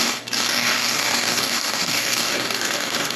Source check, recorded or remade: remade